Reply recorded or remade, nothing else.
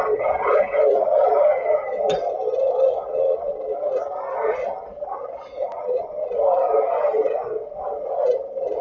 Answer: recorded